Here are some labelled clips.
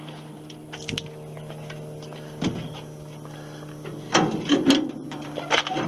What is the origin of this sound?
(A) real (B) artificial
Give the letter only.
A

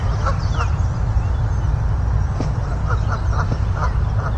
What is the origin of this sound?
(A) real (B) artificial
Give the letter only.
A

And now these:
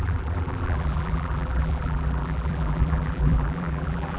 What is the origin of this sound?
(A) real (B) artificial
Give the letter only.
B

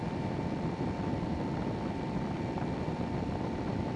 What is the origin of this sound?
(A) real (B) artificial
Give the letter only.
B